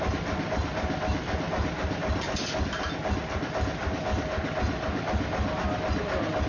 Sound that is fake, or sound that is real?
real